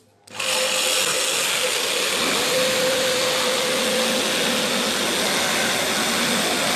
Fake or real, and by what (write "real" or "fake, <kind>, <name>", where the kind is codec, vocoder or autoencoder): real